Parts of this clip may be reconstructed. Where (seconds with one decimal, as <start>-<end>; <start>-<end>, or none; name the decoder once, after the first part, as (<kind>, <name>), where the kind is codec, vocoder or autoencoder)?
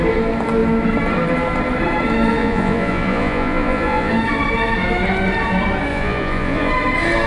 2.4-4.1 (vocoder, Vocos); 5.9-6.7